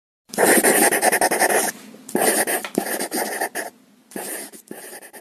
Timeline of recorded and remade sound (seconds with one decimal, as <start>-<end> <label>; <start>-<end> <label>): 0.0-4.0 recorded; 4.0-5.2 remade